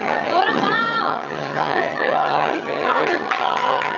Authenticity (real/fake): fake